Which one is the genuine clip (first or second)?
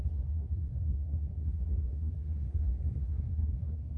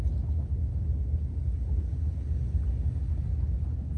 second